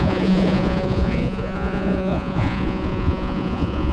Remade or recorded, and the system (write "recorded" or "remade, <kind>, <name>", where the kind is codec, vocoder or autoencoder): remade, vocoder, Vocos